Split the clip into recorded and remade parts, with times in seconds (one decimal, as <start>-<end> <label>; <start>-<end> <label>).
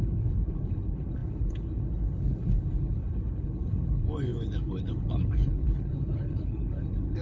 0.0-7.2 remade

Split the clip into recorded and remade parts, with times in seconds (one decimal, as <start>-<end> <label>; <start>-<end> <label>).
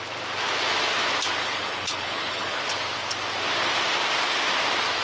0.0-1.4 recorded; 1.4-2.6 remade; 2.6-5.0 recorded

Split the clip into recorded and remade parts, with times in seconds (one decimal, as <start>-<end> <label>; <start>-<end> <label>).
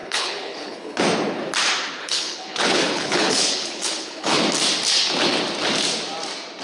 0.0-1.0 remade; 1.0-1.9 recorded; 1.9-4.4 remade; 4.4-6.6 recorded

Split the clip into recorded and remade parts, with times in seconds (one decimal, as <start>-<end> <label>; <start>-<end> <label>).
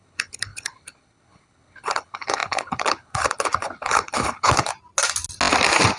0.0-4.7 remade; 4.7-6.0 recorded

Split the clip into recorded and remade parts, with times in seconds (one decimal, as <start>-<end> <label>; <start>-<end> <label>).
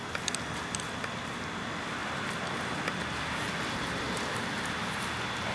0.0-5.5 recorded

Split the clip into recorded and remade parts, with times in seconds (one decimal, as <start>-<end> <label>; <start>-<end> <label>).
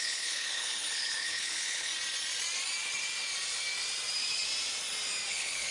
0.0-1.9 remade; 1.9-5.3 recorded; 5.3-5.7 remade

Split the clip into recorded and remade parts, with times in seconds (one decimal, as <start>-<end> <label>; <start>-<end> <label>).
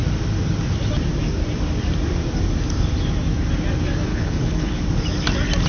0.0-4.1 recorded; 4.1-4.8 remade; 4.8-5.7 recorded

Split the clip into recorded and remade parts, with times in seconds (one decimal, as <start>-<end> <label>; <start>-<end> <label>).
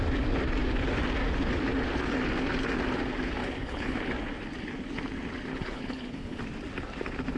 0.0-3.4 recorded; 3.4-4.1 remade; 4.1-5.5 recorded; 5.5-6.4 remade; 6.4-7.4 recorded